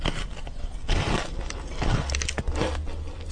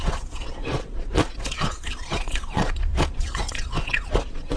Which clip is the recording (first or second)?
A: first